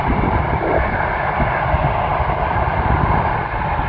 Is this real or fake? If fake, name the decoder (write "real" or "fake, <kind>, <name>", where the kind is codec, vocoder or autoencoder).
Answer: real